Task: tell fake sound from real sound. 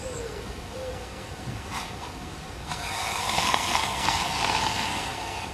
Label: fake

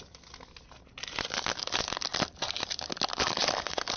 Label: real